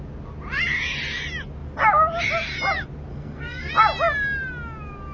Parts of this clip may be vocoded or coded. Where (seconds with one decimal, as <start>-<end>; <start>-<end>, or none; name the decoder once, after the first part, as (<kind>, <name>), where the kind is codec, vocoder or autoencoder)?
3.1-3.7 (codec, SNAC)